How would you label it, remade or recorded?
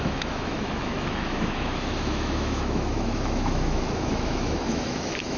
remade